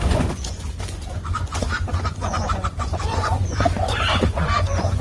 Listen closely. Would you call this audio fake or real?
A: fake